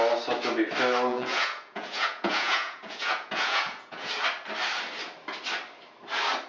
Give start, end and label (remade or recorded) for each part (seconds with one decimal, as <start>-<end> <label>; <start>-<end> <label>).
0.0-1.1 recorded; 1.1-4.1 remade; 4.1-6.5 recorded